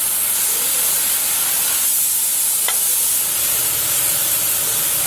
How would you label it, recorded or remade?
recorded